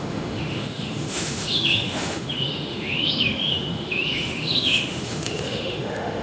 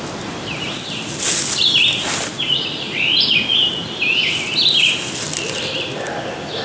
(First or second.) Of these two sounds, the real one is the second